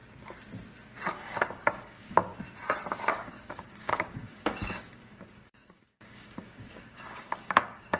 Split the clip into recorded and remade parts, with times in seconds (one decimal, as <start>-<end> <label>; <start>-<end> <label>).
0.0-1.1 recorded; 1.1-2.3 remade; 2.3-3.1 recorded; 3.1-8.0 remade